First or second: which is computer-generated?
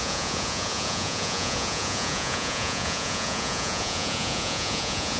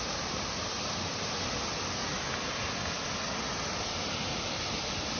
first